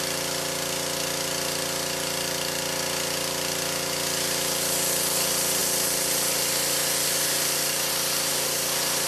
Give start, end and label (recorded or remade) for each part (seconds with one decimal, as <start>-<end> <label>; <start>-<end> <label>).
0.0-9.1 recorded